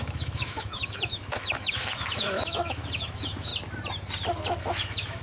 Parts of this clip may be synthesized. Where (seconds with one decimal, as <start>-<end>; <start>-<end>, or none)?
0.0-3.5; 4.6-5.2